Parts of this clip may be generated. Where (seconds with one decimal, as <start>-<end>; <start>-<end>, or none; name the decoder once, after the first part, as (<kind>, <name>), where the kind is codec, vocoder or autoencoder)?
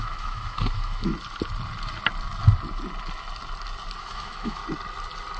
0.0-1.1 (autoencoder, DAC-VAE); 4.0-4.6